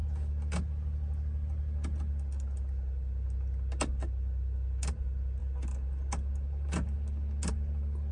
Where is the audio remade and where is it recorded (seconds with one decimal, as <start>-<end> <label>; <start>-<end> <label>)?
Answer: 0.0-8.1 recorded